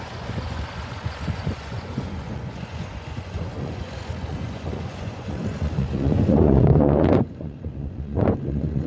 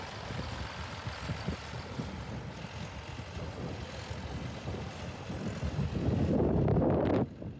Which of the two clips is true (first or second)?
second